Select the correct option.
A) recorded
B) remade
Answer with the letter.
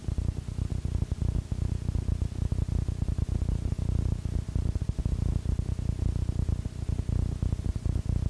A